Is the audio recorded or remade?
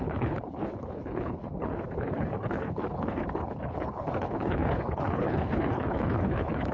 remade